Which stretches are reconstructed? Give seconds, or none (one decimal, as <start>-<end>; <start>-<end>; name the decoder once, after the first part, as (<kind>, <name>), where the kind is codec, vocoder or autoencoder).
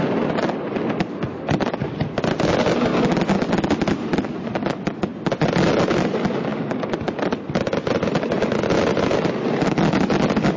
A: none